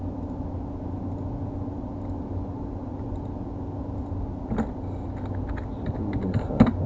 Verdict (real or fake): real